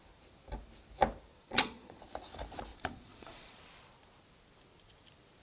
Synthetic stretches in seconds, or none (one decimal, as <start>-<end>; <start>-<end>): 1.3-2.0; 2.7-3.6